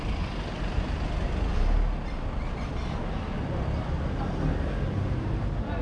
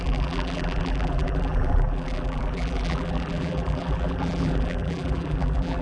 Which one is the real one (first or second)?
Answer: first